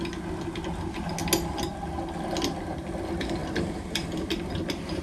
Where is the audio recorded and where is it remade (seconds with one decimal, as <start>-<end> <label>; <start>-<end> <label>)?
0.0-5.0 recorded